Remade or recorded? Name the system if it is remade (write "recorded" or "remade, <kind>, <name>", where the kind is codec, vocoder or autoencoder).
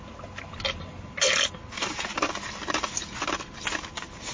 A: recorded